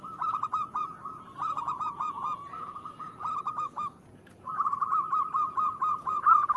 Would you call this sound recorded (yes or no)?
no